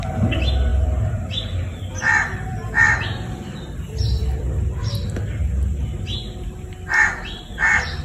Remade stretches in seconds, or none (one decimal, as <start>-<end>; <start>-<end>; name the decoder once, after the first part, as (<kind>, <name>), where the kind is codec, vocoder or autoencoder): 0.7-1.9 (vocoder, BigVGAN v2); 2.5-5.8